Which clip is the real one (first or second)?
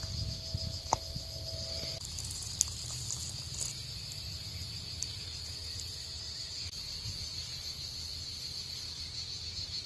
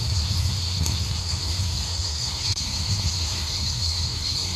first